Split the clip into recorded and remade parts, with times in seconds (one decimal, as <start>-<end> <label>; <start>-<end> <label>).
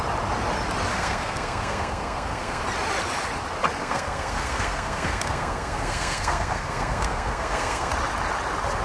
0.0-0.9 recorded; 0.9-2.6 remade; 2.6-3.8 recorded; 3.8-7.9 remade; 7.9-8.8 recorded